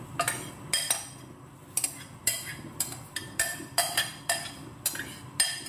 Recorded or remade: recorded